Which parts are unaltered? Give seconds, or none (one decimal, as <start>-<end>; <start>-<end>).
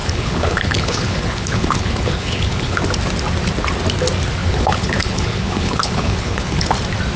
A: 2.8-4.4; 6.7-7.2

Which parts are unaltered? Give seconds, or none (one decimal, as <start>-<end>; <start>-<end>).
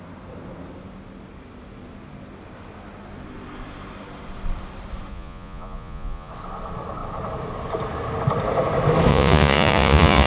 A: 0.0-5.1; 6.3-9.1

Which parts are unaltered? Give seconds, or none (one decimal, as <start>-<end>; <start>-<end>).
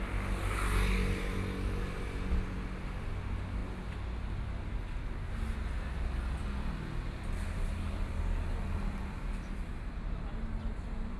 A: 0.0-11.2